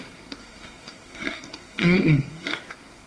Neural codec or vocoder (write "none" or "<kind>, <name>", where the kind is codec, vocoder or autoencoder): codec, SNAC